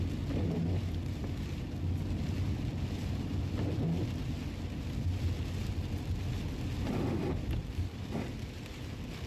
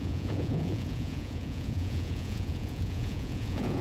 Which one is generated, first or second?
second